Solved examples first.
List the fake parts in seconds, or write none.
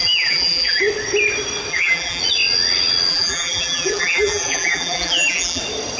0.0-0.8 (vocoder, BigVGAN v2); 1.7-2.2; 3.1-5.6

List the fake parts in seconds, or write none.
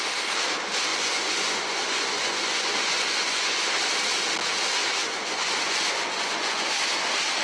0.9-3.6 (vocoder, Vocos); 5.0-6.7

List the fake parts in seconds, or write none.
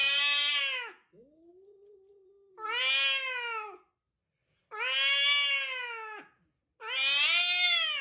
0.0-0.6 (vocoder, BigVGAN v2)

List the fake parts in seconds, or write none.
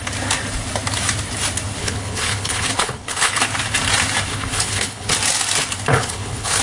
1.8-3.3 (codec, HILCodec); 4.3-5.1; 5.9-6.6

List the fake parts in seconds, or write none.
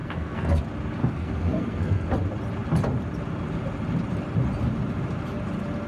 0.0-0.6 (codec, SNAC); 1.0-2.1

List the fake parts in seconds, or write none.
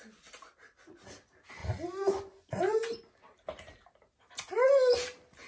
none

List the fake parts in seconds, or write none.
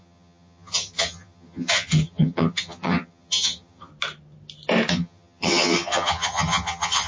0.0-3.9 (vocoder, HiFi-GAN); 4.9-7.1